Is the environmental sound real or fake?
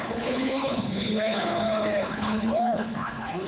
fake